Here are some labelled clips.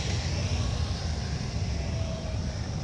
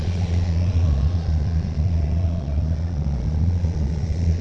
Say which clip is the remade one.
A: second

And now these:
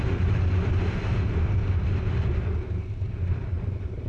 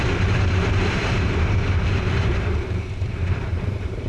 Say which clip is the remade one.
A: second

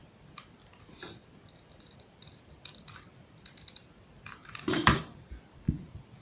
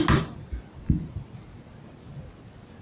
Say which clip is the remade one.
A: first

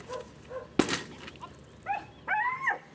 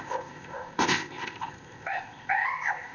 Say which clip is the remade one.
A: second